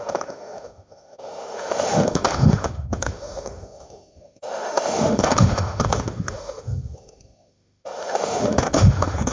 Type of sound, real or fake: fake